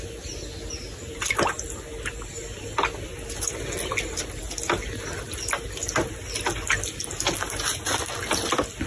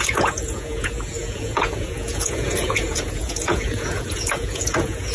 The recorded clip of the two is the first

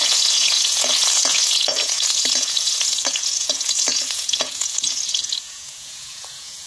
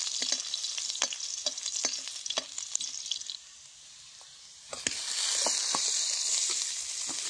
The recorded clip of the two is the second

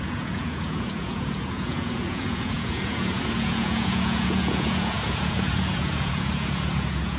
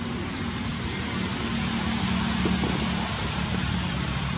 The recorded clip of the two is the second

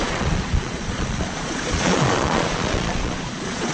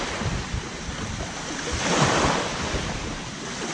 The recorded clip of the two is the second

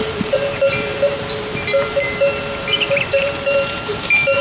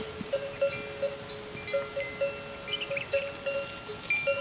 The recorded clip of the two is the second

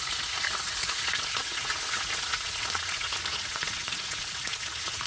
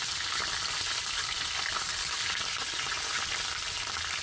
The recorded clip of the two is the second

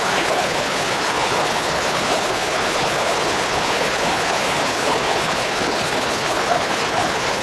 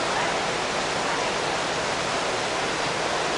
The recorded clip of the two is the second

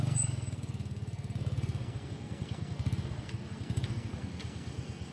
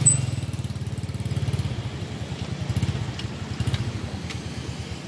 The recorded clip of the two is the second